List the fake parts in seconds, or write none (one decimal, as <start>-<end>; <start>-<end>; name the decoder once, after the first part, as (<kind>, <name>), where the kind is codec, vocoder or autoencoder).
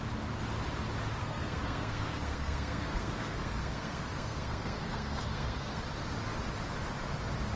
1.2-5.8 (codec, SNAC)